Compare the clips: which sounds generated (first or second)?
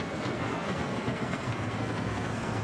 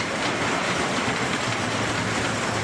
first